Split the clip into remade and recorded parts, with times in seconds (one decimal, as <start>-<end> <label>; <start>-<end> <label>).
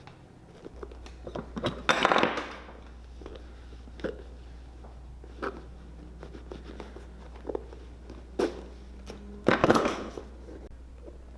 0.0-9.6 recorded; 9.6-10.2 remade; 10.2-11.4 recorded